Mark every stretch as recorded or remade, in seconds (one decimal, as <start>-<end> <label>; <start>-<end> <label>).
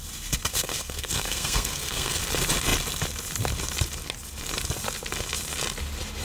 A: 0.0-0.5 recorded; 0.5-2.2 remade; 2.2-6.2 recorded